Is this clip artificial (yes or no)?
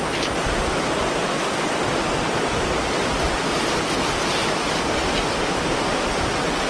no